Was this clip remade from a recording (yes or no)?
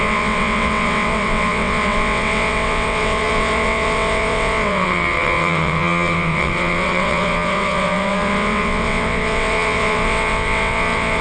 yes